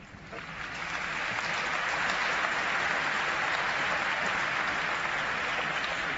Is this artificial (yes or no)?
no